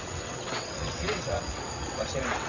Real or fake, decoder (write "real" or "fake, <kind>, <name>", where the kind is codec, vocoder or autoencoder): fake, vocoder, WaveNeXt